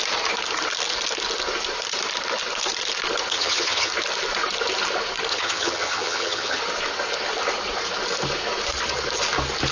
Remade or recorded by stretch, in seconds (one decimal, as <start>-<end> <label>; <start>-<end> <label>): 0.0-3.3 recorded; 3.3-3.9 remade; 3.9-5.3 recorded; 5.3-6.6 remade; 6.6-9.7 recorded